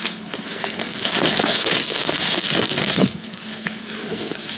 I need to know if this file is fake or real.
fake